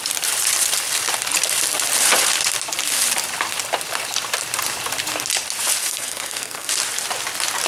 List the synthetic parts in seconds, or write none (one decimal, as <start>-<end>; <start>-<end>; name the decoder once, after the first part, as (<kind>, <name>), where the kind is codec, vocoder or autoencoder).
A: 5.8-6.7 (codec, SNAC)